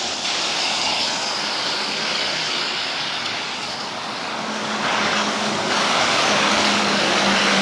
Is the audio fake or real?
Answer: fake